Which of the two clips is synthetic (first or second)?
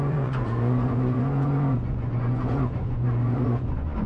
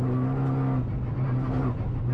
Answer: first